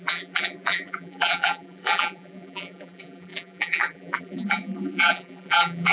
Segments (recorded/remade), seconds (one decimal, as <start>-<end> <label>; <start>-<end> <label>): 0.0-5.9 remade